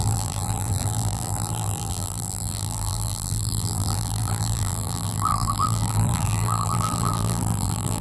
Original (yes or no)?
no